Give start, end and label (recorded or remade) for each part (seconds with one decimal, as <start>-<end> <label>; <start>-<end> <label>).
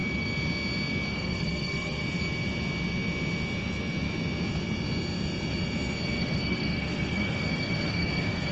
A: 0.0-1.1 recorded; 1.1-2.0 remade; 2.0-6.2 recorded; 6.2-8.5 remade